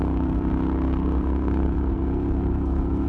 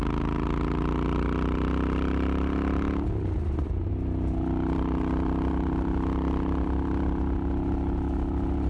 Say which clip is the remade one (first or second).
first